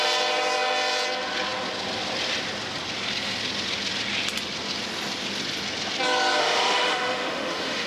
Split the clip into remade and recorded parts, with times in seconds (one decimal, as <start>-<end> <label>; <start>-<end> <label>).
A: 0.0-6.4 recorded; 6.4-7.9 remade